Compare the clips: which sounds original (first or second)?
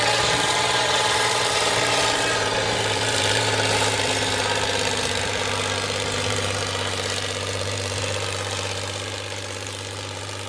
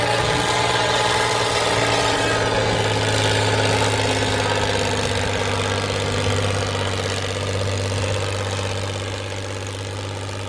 second